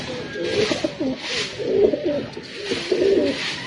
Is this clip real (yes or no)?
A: yes